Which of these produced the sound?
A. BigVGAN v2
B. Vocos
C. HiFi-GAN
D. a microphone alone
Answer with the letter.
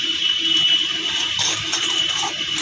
D